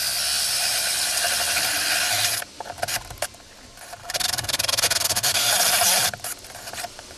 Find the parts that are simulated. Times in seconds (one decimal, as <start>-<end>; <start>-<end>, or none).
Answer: 4.0-5.5